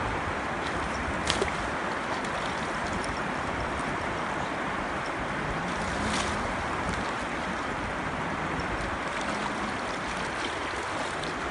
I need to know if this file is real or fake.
fake